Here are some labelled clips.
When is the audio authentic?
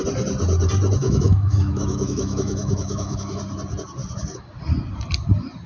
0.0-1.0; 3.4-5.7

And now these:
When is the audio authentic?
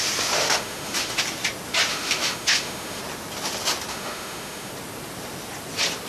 0.0-0.4; 1.2-1.9; 3.0-3.9; 4.7-6.1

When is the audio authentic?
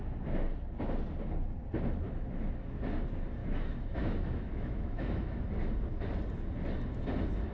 0.0-3.4; 5.4-7.5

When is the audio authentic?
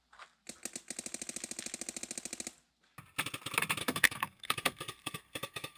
0.0-3.8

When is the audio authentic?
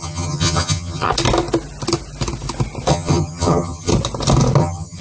1.1-2.9; 3.9-4.6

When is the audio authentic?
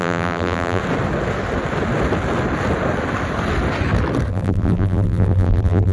0.8-4.3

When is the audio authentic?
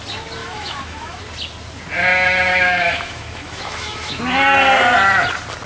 0.0-0.4; 1.2-2.5; 4.2-5.7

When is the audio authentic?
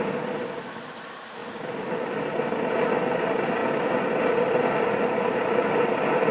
0.0-6.3